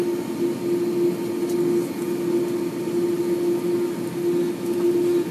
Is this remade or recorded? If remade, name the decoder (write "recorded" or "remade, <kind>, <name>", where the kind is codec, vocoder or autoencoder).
recorded